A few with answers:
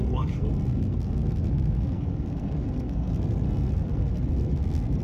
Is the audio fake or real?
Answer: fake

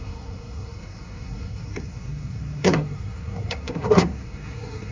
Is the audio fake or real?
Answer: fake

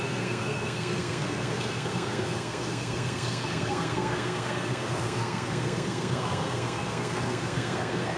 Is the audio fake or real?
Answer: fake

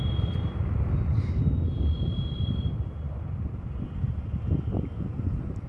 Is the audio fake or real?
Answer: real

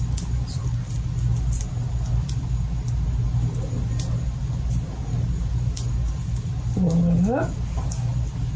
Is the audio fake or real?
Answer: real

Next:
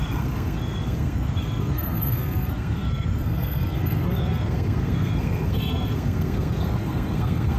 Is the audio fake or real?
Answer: fake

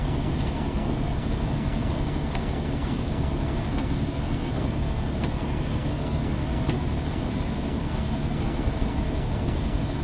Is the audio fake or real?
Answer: fake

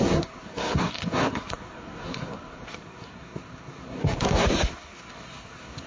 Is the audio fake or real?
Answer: fake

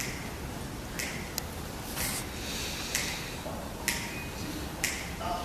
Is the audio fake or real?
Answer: real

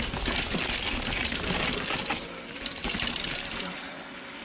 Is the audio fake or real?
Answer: real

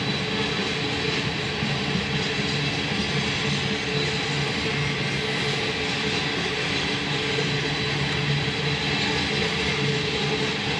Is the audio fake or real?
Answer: real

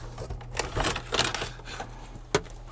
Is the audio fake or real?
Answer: real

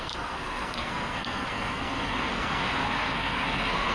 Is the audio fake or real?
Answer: fake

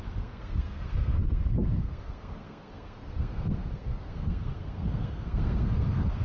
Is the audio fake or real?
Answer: fake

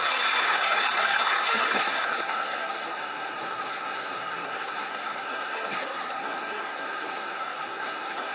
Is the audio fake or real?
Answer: fake